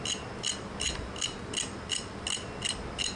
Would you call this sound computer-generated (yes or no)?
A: no